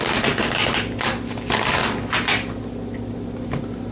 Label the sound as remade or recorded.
recorded